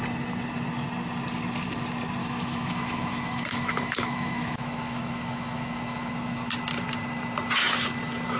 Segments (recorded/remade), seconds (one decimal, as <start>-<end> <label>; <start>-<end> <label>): 0.0-2.2 recorded; 2.2-6.1 remade; 6.1-8.4 recorded